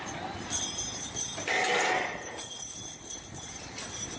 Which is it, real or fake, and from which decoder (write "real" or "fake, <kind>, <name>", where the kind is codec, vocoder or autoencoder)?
real